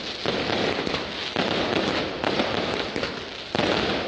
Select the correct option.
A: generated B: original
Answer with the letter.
B